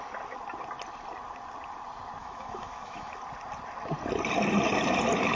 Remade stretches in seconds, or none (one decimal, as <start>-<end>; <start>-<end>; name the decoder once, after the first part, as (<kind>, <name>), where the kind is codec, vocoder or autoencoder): 2.2-3.2 (autoencoder, DAC-VAE)